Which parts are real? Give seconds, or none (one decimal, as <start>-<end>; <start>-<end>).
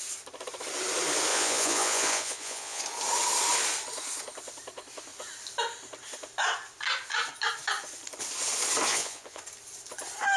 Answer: 0.0-1.3; 2.8-8.9; 9.4-10.4